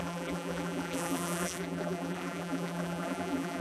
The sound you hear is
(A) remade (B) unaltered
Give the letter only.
A